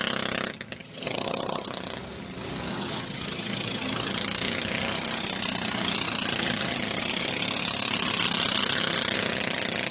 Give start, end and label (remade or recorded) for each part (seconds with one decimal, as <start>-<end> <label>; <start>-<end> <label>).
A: 0.0-0.8 recorded; 0.8-1.7 remade; 1.7-2.7 recorded; 2.7-4.1 remade; 4.1-9.9 recorded